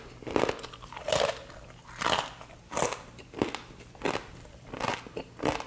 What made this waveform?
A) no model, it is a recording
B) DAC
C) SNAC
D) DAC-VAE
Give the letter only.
A